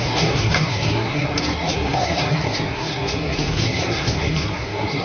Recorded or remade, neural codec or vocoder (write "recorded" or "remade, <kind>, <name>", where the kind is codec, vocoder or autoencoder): remade, codec, SNAC